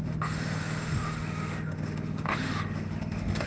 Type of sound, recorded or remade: remade